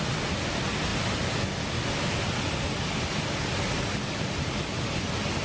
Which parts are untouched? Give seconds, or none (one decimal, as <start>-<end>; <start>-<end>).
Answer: 0.0-5.4